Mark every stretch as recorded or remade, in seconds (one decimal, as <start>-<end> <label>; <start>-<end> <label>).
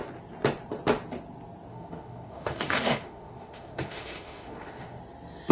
0.0-1.7 recorded; 1.7-5.0 remade; 5.0-5.5 recorded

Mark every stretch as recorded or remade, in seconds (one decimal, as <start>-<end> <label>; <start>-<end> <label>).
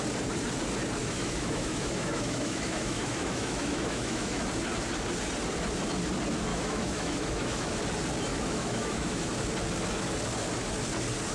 0.0-1.0 recorded; 1.0-4.5 remade; 4.5-6.5 recorded; 6.5-7.8 remade; 7.8-8.3 recorded; 8.3-9.3 remade; 9.3-11.3 recorded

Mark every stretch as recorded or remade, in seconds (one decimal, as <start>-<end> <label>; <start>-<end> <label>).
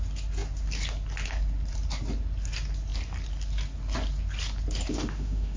0.0-4.9 recorded; 4.9-5.6 remade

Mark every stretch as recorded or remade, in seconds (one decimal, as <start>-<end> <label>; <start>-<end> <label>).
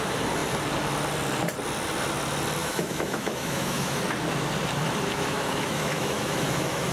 0.0-2.6 recorded; 2.6-4.0 remade; 4.0-5.1 recorded; 5.1-6.9 remade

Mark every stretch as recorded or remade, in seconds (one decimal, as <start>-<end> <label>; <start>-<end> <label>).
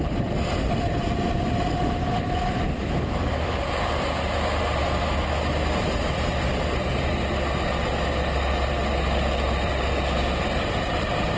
0.0-2.0 recorded; 2.0-3.6 remade; 3.6-4.8 recorded; 4.8-5.5 remade; 5.5-11.4 recorded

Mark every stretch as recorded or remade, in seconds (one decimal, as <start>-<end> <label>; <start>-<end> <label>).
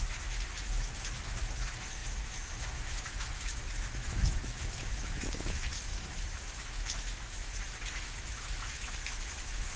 0.0-9.8 remade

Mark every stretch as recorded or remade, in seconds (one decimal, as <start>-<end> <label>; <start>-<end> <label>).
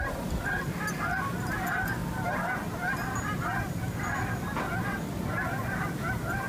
0.0-6.5 recorded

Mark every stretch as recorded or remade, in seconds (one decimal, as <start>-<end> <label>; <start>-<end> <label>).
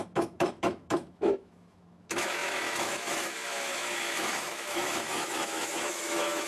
0.0-6.5 remade